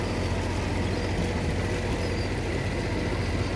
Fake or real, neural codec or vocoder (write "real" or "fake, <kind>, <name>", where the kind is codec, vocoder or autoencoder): real